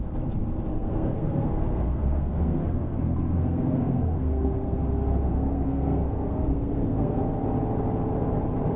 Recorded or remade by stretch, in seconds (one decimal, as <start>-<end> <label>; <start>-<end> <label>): 0.0-0.7 recorded; 0.7-4.8 remade; 4.8-5.3 recorded; 5.3-7.2 remade; 7.2-8.8 recorded